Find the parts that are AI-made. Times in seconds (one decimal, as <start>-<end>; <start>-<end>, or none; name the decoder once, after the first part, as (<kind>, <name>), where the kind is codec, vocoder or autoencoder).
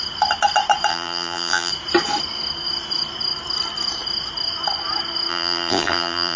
0.9-1.7 (vocoder, BigVGAN v2); 5.3-6.4